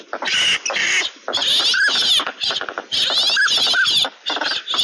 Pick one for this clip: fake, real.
real